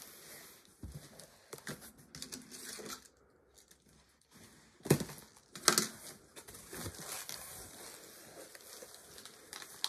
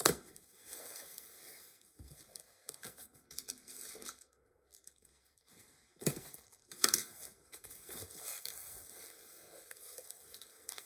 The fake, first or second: second